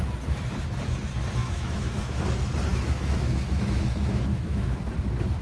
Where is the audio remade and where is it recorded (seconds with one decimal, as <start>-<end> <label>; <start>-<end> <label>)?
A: 0.0-1.4 recorded; 1.4-2.2 remade; 2.2-2.7 recorded; 2.7-4.8 remade; 4.8-5.4 recorded